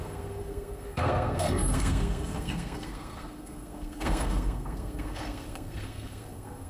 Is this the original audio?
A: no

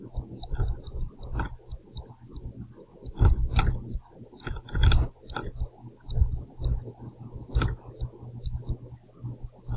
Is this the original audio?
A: yes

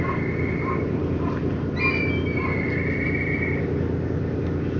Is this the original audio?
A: yes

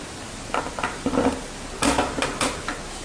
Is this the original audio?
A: yes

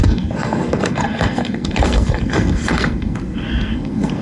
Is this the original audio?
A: no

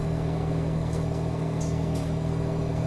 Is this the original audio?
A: no